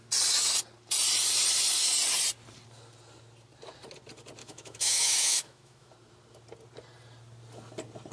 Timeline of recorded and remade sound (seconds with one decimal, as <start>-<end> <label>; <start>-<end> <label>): 0.0-4.4 recorded; 4.4-5.9 remade; 5.9-8.1 recorded